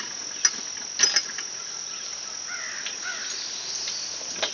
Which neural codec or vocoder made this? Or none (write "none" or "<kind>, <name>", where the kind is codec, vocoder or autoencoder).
none